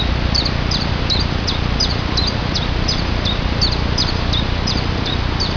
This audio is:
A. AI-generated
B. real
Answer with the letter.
B